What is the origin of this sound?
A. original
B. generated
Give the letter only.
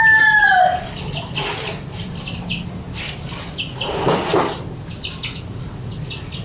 A